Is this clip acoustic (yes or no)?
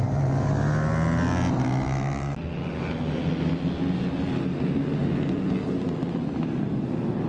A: yes